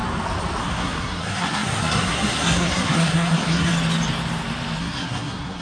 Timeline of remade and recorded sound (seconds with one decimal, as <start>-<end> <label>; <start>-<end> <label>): 0.0-0.6 recorded; 0.6-3.7 remade; 3.7-4.8 recorded; 4.8-5.6 remade